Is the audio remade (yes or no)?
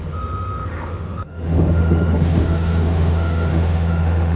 yes